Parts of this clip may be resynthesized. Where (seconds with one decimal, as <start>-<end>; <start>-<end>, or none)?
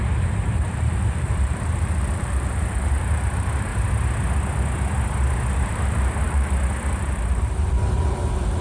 0.0-3.7; 5.5-8.6